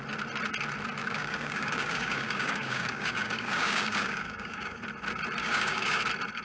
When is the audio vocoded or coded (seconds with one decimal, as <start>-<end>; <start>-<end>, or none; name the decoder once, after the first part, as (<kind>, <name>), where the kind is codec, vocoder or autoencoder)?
1.0-4.8 (codec, DAC); 5.4-6.0